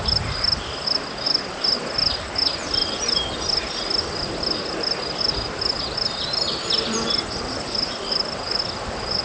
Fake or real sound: real